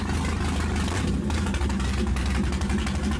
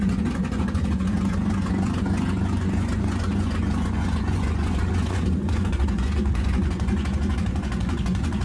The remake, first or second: second